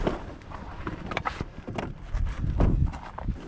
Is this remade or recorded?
remade